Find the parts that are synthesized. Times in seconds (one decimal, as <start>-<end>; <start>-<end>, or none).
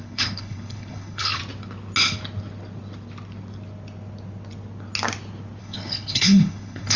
0.0-1.4; 5.6-7.0